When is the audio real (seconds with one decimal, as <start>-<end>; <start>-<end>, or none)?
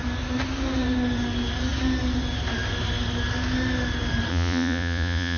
0.0-4.3